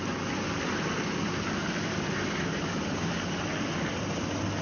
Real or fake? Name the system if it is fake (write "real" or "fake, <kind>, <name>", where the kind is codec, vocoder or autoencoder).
real